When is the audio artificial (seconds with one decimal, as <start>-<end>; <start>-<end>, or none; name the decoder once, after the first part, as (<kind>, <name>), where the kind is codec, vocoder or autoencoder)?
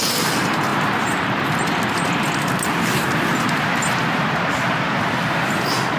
none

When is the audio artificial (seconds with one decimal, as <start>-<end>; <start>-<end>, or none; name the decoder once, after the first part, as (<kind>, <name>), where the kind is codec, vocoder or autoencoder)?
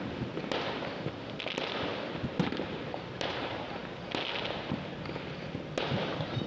none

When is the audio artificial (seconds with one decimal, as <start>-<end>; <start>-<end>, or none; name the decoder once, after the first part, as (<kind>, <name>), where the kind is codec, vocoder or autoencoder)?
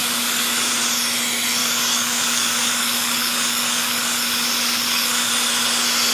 0.0-0.7 (codec, DAC); 1.6-5.3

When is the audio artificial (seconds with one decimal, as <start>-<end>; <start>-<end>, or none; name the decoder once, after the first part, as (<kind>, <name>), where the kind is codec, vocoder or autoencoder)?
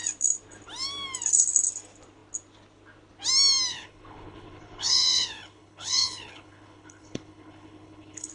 3.7-8.3 (codec, HILCodec)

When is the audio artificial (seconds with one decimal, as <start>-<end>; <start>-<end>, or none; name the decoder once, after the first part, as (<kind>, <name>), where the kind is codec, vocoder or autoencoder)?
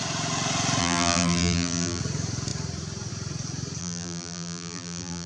0.8-2.0 (vocoder, BigVGAN v2); 3.8-5.3